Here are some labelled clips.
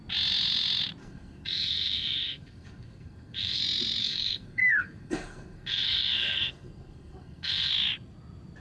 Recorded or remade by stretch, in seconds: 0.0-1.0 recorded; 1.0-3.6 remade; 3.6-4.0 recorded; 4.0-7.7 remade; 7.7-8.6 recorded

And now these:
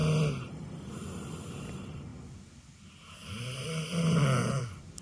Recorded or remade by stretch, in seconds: 0.0-5.0 recorded